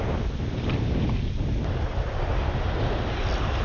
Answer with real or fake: real